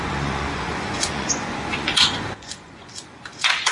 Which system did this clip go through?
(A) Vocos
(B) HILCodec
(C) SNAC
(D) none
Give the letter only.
A